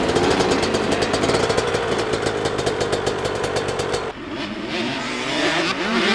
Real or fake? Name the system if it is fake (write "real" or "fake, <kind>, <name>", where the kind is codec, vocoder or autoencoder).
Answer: fake, vocoder, BigVGAN v2